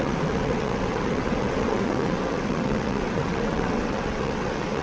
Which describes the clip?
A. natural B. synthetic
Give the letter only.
B